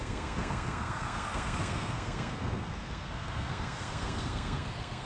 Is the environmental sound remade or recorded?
remade